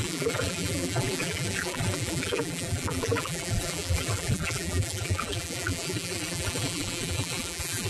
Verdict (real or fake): fake